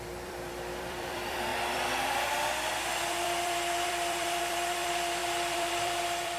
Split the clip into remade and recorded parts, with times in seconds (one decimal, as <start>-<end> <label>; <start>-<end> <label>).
0.0-6.4 remade